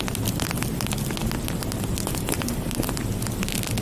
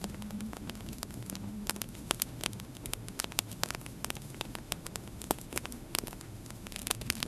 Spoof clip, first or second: second